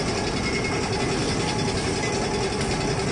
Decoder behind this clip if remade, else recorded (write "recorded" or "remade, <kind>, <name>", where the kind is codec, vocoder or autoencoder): recorded